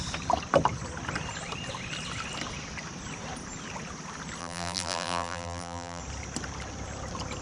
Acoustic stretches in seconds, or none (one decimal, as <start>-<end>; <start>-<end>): 0.0-4.4; 6.0-7.4